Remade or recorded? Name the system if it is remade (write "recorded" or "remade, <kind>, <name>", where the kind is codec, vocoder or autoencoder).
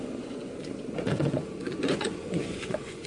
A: remade, vocoder, Vocos